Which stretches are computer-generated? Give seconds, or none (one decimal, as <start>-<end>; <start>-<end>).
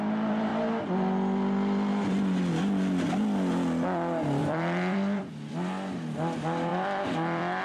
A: 4.4-5.3; 6.7-7.6